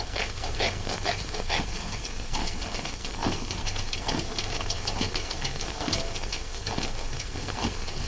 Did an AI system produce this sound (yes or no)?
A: yes